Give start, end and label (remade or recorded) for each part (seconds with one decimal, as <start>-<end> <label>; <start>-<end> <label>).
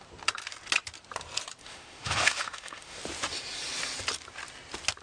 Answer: 0.0-1.6 recorded; 1.6-3.0 remade; 3.0-5.0 recorded